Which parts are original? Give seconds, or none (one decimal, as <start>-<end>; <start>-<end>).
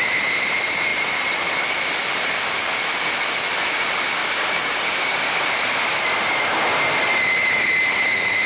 0.0-4.2; 5.4-8.5